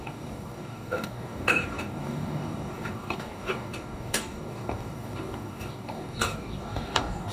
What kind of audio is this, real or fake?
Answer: fake